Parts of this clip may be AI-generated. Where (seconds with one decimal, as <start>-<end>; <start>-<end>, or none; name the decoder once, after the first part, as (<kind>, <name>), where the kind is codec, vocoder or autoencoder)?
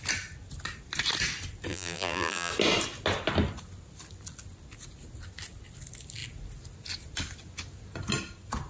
1.7-2.5 (vocoder, BigVGAN v2)